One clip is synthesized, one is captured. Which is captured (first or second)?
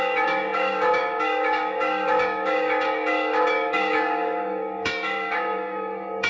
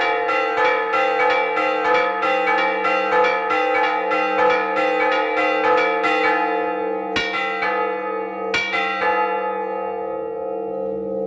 second